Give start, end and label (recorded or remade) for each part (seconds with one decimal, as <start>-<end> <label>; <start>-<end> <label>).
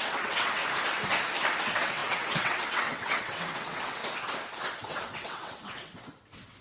0.0-0.6 remade; 0.6-1.6 recorded; 1.6-4.0 remade; 4.0-4.8 recorded; 4.8-6.6 remade